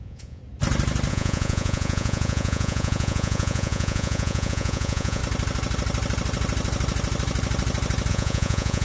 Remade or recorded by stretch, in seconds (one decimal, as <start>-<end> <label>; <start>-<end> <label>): 0.0-0.4 remade; 0.4-1.1 recorded; 1.1-5.2 remade; 5.2-8.1 recorded; 8.1-8.8 remade